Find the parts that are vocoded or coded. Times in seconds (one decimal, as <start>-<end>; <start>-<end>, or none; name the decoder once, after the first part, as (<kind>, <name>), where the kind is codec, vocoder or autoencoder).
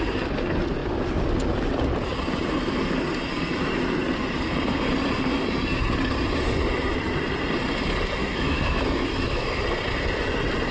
8.2-9.6 (autoencoder, DAC-VAE)